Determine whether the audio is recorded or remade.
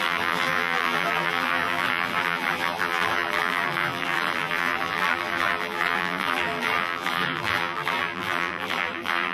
remade